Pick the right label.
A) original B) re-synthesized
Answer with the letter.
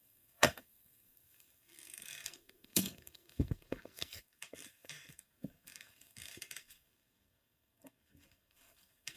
B